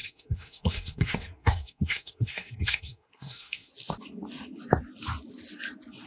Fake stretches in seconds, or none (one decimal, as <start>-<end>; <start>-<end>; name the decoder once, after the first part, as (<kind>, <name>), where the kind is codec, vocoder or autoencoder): 0.0-3.7 (codec, SNAC)